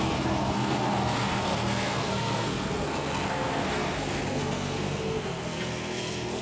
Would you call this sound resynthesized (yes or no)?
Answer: yes